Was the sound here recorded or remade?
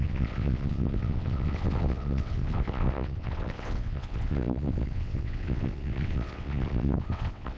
remade